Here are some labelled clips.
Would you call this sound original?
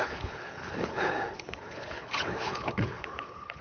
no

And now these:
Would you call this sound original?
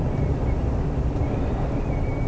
yes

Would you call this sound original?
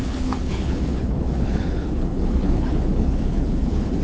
no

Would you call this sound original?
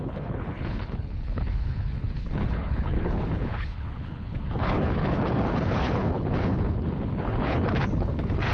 no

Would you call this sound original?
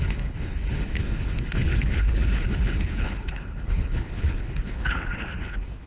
no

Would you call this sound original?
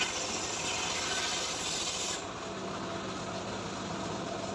yes